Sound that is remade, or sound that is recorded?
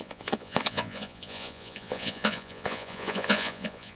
remade